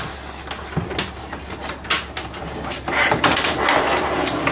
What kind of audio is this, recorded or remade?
recorded